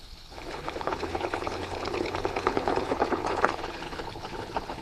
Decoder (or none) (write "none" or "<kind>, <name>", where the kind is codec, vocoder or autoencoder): codec, HILCodec